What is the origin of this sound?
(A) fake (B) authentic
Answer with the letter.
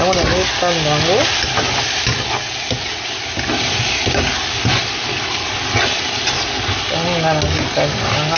B